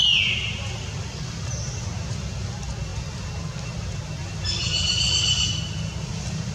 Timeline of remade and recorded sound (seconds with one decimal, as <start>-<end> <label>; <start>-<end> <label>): 0.0-6.5 recorded